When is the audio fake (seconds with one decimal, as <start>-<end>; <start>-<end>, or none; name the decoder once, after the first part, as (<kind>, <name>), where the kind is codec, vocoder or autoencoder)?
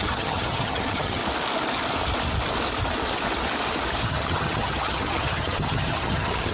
0.0-1.2 (vocoder, HiFi-GAN); 4.0-6.5